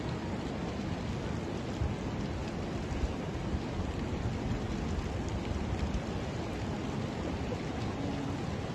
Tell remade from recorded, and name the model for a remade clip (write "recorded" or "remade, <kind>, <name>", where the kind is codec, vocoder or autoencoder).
recorded